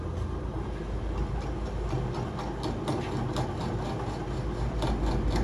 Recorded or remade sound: recorded